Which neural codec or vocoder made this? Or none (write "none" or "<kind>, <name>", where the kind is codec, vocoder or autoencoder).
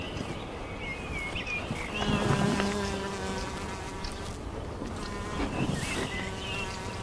none